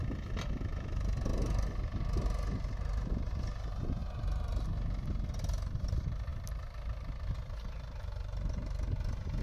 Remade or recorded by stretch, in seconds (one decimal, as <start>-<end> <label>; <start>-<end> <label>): 0.0-9.4 recorded